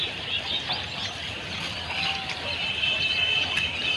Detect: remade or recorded recorded